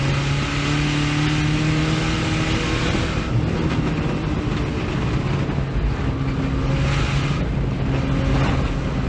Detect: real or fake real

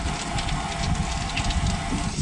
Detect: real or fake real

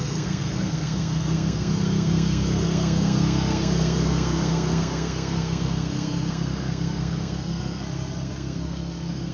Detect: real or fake fake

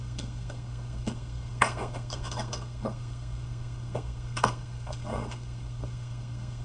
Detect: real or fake fake